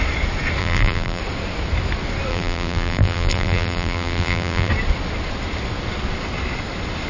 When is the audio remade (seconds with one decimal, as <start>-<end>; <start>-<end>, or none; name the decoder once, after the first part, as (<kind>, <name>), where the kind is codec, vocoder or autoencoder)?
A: 0.6-1.2 (vocoder, BigVGAN v2); 2.3-4.7